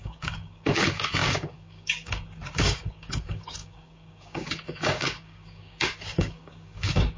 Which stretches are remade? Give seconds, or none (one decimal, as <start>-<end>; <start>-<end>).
0.0-7.2